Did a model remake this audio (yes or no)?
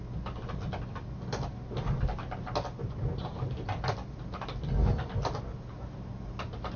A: no